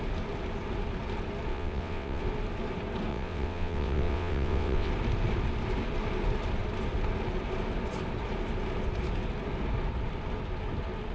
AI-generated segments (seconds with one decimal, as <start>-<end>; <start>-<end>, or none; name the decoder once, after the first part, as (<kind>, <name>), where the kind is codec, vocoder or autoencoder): 1.5-2.2 (vocoder, WaveNeXt); 3.1-4.9